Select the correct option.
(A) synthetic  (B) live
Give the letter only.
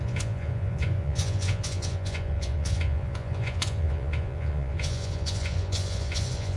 A